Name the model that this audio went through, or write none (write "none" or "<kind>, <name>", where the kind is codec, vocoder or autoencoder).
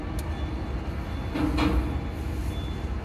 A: none